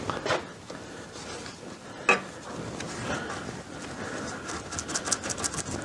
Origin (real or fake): real